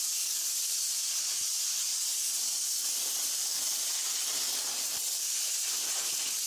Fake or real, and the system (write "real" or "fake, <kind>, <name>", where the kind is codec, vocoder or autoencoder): real